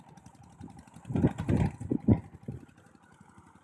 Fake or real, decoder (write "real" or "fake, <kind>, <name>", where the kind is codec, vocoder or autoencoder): real